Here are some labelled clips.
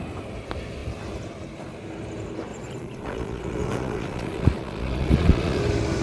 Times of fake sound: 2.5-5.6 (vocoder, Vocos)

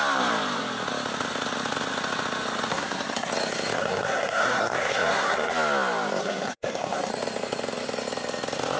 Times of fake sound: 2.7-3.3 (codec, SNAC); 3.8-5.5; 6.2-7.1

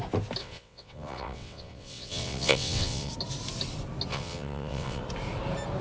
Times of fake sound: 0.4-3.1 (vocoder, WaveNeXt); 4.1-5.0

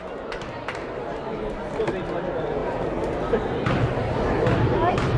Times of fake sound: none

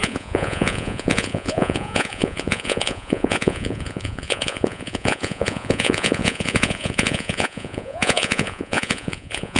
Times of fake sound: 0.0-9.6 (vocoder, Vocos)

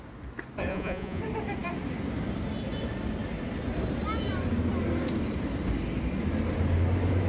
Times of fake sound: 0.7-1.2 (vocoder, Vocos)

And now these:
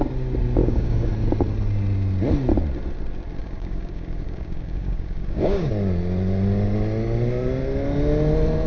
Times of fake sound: 0.6-1.1 (codec, DAC); 3.4-5.7

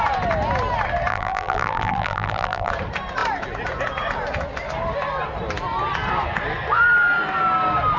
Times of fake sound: 1.1-2.7 (vocoder, BigVGAN v2)